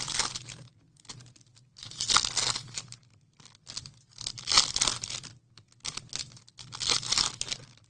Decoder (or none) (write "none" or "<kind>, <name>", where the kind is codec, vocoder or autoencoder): none